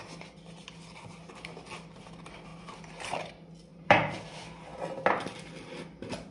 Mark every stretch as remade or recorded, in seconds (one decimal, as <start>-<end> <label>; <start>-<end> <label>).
0.0-2.5 recorded; 2.5-3.3 remade; 3.3-3.7 recorded; 3.7-4.2 remade; 4.2-6.3 recorded